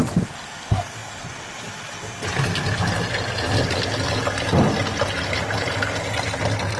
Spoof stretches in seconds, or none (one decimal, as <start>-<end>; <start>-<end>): none